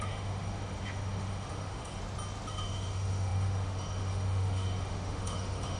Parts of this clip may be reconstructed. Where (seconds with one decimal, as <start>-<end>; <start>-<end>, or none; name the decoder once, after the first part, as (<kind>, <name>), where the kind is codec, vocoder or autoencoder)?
0.0-2.0 (autoencoder, DAC-VAE); 2.5-5.8